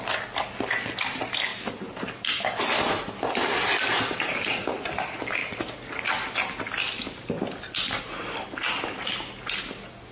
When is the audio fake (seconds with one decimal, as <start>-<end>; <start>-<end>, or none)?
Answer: none